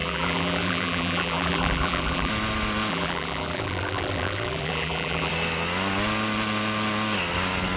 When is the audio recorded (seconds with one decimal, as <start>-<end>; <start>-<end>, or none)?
2.3-2.9; 5.3-7.8